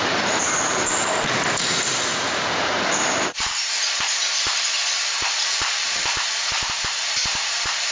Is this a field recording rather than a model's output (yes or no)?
no